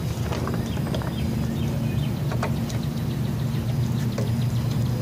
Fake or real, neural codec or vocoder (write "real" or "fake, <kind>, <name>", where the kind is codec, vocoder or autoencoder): real